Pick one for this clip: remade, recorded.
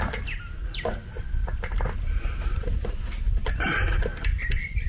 recorded